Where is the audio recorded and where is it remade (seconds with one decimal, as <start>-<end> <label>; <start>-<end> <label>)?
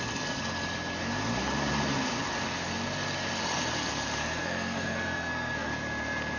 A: 0.0-4.2 recorded; 4.2-5.7 remade; 5.7-6.4 recorded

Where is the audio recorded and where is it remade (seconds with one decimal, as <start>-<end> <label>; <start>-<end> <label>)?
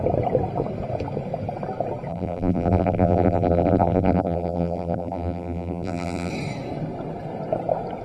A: 0.0-2.1 recorded; 2.1-6.3 remade; 6.3-8.0 recorded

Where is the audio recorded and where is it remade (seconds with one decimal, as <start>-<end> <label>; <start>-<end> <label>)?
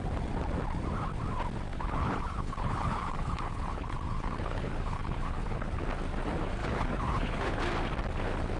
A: 0.0-1.7 recorded; 1.7-5.8 remade; 5.8-6.6 recorded; 6.6-7.6 remade; 7.6-8.6 recorded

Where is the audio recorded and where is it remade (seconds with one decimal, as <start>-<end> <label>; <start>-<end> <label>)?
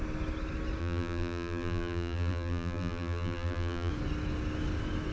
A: 0.0-0.8 recorded; 0.8-3.9 remade; 3.9-5.1 recorded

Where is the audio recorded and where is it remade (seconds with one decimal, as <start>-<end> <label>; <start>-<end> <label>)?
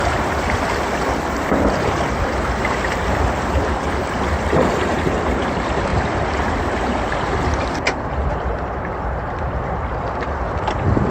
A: 0.0-11.1 remade